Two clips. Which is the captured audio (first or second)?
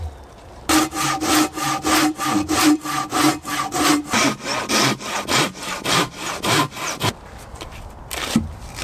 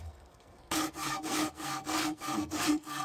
first